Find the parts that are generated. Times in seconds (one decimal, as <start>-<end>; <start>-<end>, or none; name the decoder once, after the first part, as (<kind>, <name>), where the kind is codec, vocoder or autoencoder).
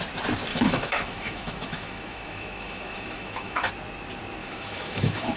0.5-3.7 (autoencoder, DAC-VAE); 4.4-5.4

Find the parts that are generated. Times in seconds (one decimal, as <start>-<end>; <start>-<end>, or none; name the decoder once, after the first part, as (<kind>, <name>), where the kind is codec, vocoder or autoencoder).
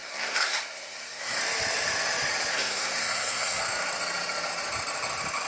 0.0-1.4 (codec, SNAC); 2.5-3.6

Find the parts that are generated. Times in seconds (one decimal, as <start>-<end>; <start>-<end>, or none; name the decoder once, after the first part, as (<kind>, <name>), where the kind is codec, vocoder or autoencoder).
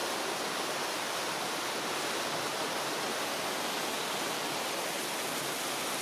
0.0-2.2 (vocoder, BigVGAN v2)